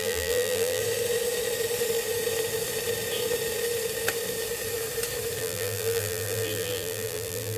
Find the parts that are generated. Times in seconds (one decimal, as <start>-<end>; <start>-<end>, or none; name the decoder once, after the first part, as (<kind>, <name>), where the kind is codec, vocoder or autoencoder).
0.0-0.8 (vocoder, BigVGAN v2); 5.4-7.6